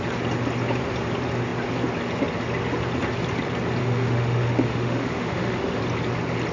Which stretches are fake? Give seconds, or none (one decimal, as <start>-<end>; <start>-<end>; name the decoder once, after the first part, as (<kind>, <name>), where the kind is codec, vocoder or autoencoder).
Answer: 3.8-5.8 (autoencoder, DAC-VAE)